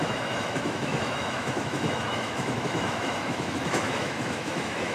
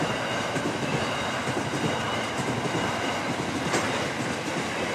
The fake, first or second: first